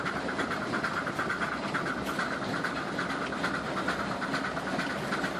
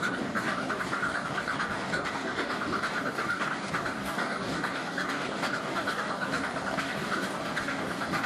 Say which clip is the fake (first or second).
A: second